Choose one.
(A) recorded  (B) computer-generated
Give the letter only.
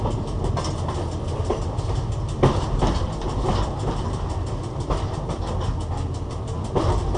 A